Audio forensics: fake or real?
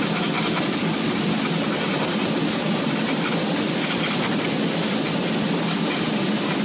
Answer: real